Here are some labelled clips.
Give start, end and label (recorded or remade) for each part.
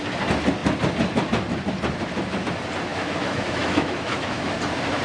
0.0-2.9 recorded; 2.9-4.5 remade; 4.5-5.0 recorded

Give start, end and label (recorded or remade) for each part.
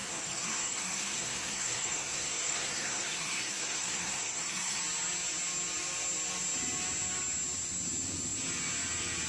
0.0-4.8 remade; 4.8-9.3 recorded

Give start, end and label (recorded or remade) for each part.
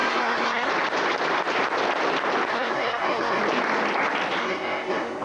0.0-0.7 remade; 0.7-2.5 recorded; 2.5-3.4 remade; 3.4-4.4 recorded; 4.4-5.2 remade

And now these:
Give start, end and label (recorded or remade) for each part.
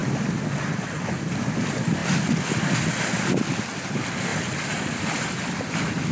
0.0-0.6 recorded; 0.6-6.1 remade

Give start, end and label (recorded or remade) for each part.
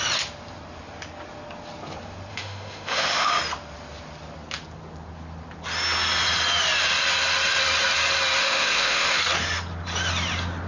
0.0-2.3 recorded; 2.3-3.3 remade; 3.3-8.4 recorded; 8.4-9.2 remade; 9.2-10.7 recorded